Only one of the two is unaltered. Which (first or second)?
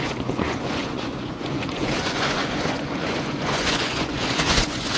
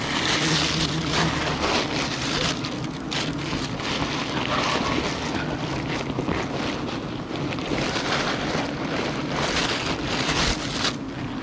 second